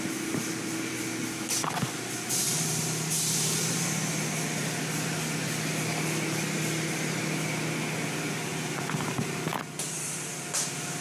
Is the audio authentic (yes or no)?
yes